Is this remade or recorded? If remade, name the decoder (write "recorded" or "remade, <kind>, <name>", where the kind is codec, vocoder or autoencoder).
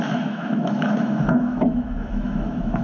remade, autoencoder, DAC-VAE